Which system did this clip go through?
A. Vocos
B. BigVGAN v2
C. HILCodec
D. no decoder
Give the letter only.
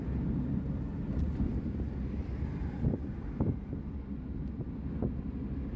D